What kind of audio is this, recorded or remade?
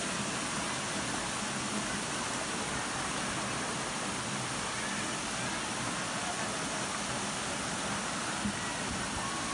recorded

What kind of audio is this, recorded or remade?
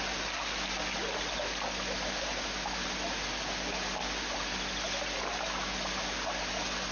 recorded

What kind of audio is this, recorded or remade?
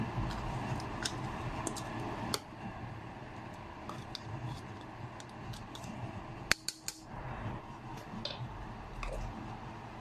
recorded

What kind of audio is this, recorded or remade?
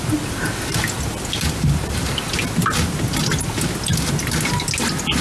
recorded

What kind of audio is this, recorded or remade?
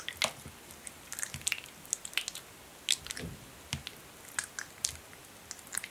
recorded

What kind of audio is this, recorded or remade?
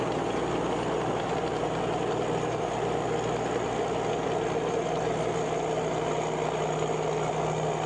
recorded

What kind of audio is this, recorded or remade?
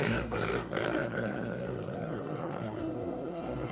remade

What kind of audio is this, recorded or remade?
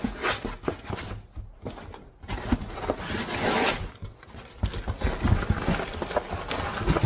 recorded